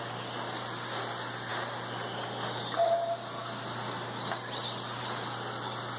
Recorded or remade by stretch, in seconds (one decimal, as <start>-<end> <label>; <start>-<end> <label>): 0.0-6.0 recorded